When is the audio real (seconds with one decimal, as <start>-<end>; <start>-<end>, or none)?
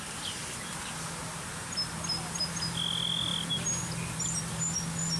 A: 0.0-5.2